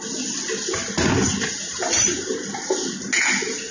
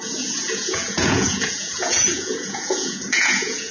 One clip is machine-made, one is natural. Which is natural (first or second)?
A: first